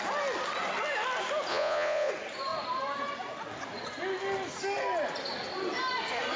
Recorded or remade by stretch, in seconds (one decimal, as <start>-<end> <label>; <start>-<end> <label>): 0.0-1.5 recorded; 1.5-2.1 remade; 2.1-6.4 recorded